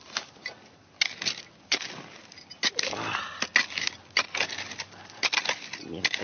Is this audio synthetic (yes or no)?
no